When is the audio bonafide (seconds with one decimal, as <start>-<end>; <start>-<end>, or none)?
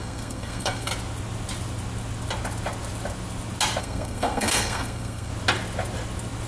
0.9-3.8; 5.3-6.5